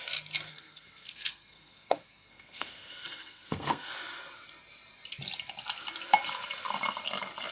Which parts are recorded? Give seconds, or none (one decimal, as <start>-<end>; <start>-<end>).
0.0-0.5; 3.9-7.5

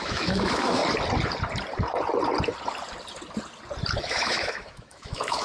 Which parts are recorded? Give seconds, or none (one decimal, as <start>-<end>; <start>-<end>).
0.8-4.0

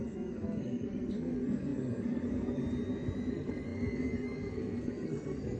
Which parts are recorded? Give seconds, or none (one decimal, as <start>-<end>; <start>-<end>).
2.6-3.3